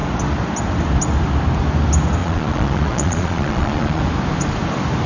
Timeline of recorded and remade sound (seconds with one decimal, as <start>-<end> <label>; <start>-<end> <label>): 0.0-2.2 recorded; 2.2-4.0 remade; 4.0-5.1 recorded